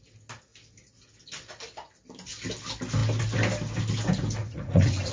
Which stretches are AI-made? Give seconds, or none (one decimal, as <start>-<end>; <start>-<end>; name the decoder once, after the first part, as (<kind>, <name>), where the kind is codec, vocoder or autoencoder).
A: 4.4-5.1 (vocoder, Vocos)